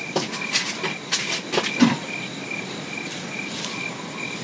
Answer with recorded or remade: recorded